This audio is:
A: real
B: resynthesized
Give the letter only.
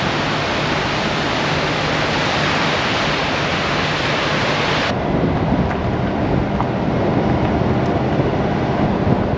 A